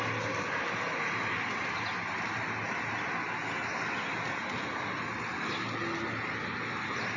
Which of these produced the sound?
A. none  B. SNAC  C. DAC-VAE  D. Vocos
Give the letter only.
A